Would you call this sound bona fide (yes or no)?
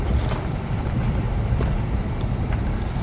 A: no